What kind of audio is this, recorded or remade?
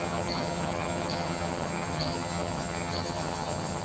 remade